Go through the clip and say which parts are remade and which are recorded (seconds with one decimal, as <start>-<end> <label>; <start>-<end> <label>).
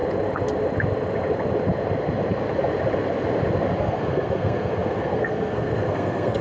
0.0-3.8 recorded; 3.8-6.4 remade